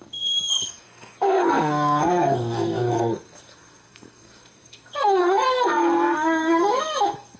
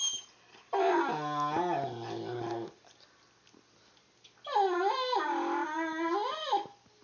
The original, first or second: second